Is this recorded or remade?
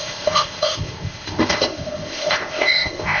remade